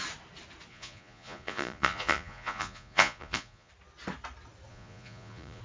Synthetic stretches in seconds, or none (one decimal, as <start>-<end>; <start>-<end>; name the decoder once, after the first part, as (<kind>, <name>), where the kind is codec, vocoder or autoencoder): 0.7-3.7 (vocoder, Vocos); 4.7-5.6